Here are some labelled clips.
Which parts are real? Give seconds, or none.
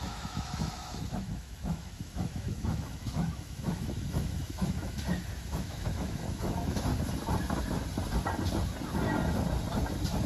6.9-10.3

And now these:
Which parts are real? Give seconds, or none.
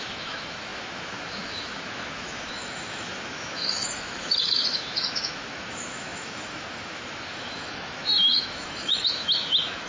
none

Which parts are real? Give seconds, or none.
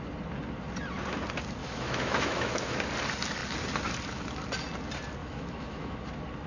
0.0-1.6; 2.9-5.2; 6.0-6.5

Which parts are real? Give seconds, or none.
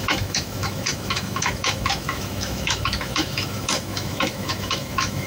none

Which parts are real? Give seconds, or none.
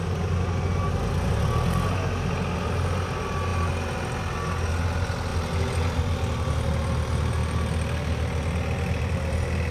0.0-9.7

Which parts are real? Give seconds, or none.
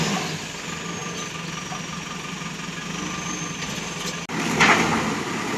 0.0-5.6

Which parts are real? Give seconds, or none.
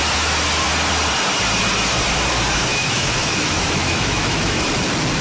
0.0-2.7; 4.6-5.2